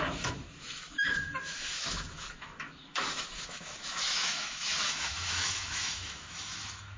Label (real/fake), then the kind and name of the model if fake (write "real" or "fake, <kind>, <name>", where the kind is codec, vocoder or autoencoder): fake, autoencoder, DAC-VAE